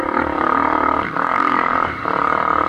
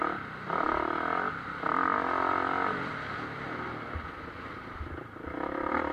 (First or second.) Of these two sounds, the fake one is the first